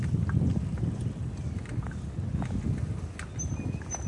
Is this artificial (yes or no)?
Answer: no